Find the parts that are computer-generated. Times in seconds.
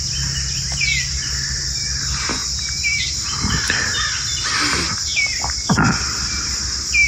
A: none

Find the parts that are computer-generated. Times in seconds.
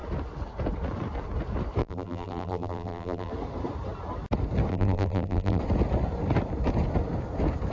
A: 1.8-3.3; 4.7-5.6